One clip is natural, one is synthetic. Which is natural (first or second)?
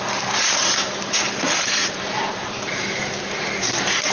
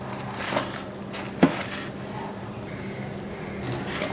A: second